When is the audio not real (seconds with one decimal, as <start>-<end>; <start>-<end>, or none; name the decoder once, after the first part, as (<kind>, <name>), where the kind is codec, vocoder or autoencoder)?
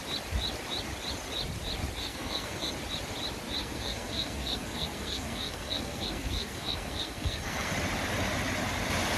2.0-2.7 (codec, SNAC); 3.6-7.7